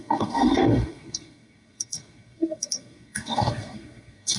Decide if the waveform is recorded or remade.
remade